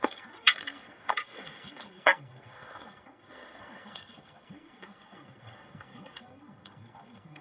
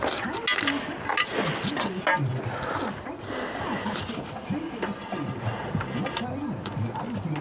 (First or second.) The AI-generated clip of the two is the first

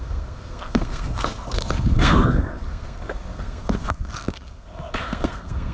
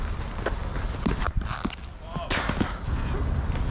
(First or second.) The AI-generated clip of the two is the first